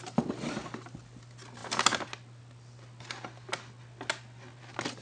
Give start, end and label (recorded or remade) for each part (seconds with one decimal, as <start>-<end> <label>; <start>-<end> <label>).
0.0-5.0 recorded